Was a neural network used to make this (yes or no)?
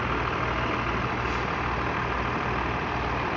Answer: no